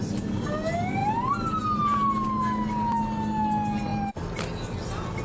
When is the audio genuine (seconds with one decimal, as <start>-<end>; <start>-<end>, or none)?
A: 0.0-5.2